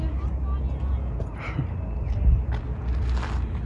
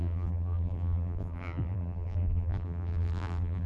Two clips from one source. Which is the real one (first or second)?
first